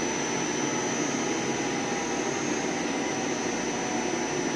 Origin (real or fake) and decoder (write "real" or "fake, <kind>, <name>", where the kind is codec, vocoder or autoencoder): real